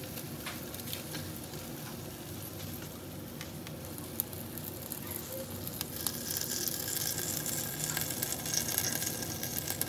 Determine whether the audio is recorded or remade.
recorded